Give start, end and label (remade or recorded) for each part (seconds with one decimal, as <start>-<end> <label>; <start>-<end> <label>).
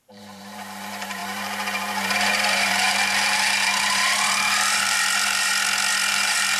0.0-5.5 remade; 5.5-6.1 recorded; 6.1-6.6 remade